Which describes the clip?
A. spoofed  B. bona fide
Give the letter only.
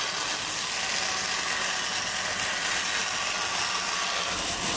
B